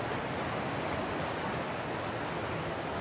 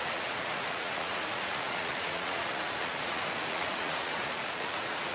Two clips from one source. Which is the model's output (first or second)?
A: second